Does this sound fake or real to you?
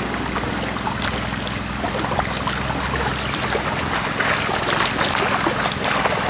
real